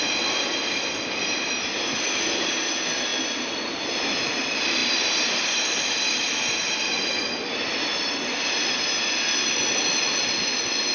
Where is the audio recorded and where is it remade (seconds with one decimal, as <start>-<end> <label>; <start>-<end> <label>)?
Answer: 0.0-10.9 recorded